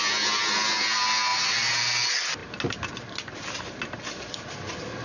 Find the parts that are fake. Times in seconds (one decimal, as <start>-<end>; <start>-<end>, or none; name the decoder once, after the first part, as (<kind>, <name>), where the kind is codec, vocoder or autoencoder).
none